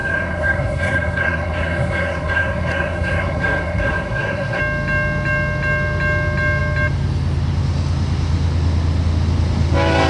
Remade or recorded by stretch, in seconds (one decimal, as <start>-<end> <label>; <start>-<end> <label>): 0.0-4.6 remade; 4.6-10.1 recorded